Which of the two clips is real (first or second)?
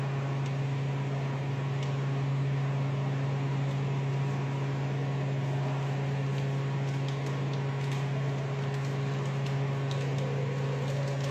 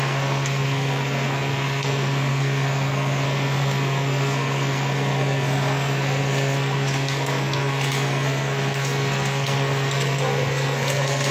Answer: first